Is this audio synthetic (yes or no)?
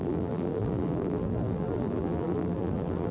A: yes